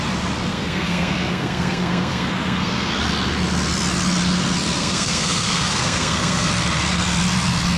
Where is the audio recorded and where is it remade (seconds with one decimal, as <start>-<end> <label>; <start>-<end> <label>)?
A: 0.0-0.5 recorded; 0.5-2.9 remade; 2.9-4.8 recorded; 4.8-6.5 remade; 6.5-7.8 recorded